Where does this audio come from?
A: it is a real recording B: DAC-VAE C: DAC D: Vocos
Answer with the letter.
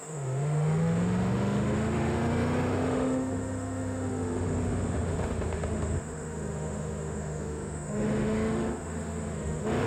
B